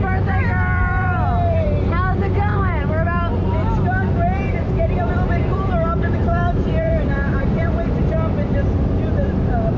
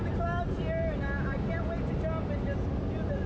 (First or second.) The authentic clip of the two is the second